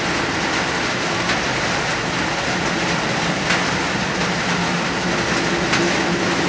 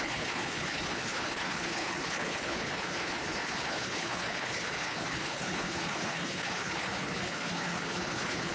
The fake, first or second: second